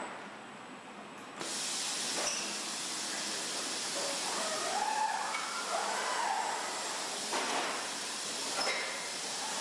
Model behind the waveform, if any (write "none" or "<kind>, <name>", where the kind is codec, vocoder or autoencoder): none